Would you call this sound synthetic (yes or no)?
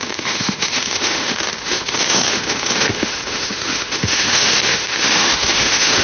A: yes